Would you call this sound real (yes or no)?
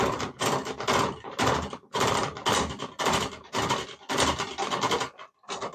yes